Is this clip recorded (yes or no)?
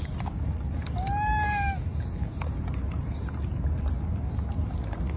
yes